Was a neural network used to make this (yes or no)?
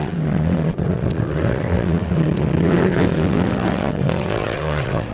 yes